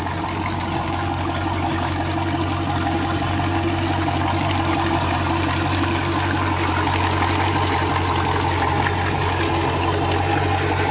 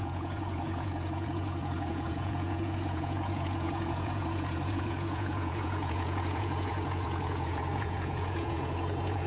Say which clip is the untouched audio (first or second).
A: first